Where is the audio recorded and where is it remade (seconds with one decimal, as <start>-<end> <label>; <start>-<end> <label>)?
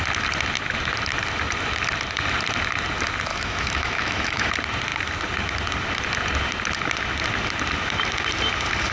0.0-3.3 recorded; 3.3-4.5 remade; 4.5-8.9 recorded